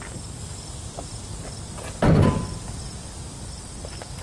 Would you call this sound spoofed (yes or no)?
no